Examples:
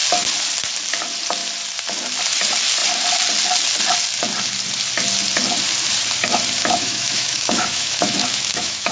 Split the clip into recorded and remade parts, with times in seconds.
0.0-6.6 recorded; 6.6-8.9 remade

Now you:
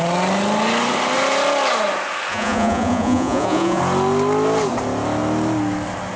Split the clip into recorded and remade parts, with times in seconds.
0.0-2.3 recorded; 2.3-3.8 remade; 3.8-6.2 recorded

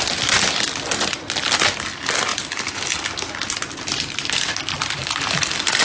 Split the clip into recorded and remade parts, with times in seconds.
0.0-2.3 recorded; 2.3-3.0 remade; 3.0-5.0 recorded; 5.0-5.8 remade

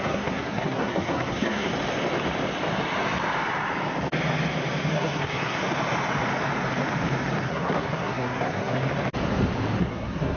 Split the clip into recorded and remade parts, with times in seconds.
0.0-1.7 remade; 1.7-4.9 recorded; 4.9-5.6 remade; 5.6-7.4 recorded; 7.4-8.8 remade; 8.8-9.8 recorded; 9.8-10.4 remade

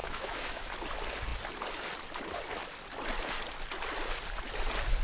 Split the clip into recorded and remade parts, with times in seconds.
0.0-0.7 remade; 0.7-5.0 recorded

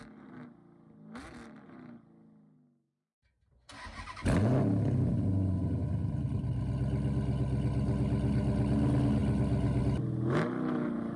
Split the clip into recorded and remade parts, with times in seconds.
0.0-11.2 recorded

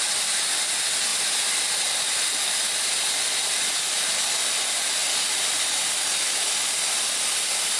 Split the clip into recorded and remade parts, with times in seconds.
0.0-7.8 recorded